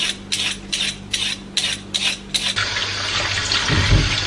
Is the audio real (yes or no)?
yes